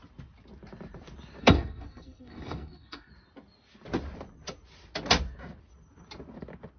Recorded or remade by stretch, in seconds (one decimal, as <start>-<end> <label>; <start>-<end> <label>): 0.0-1.4 recorded; 1.4-3.1 remade; 3.1-6.8 recorded